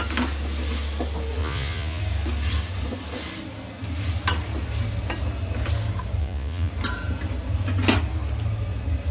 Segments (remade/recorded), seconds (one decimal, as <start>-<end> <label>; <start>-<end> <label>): 0.0-1.4 recorded; 1.4-2.0 remade; 2.0-6.2 recorded; 6.2-6.7 remade; 6.7-9.1 recorded